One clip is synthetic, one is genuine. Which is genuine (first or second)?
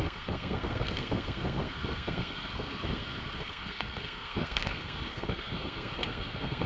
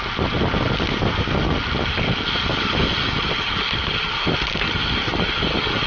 second